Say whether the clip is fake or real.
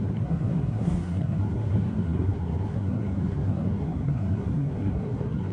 fake